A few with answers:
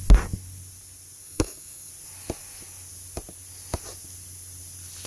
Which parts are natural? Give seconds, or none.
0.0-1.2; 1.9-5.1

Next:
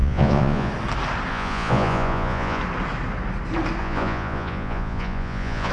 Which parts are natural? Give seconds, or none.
0.7-1.3; 2.6-3.8

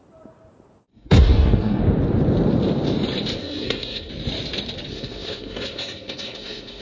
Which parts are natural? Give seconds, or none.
0.0-0.9; 1.8-3.4; 4.1-4.9

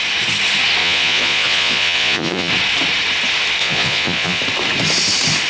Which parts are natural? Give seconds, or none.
0.0-0.8; 2.5-3.6; 4.4-5.5

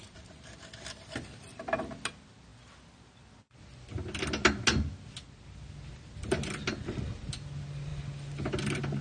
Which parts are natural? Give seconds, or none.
0.0-9.0

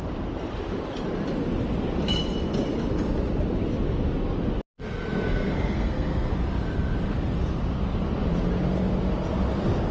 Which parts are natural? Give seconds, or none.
0.0-5.3; 6.3-9.9

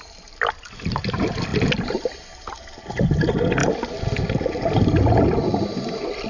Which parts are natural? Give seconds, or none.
0.0-6.3

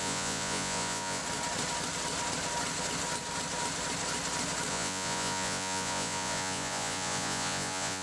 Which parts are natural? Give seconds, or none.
1.2-4.7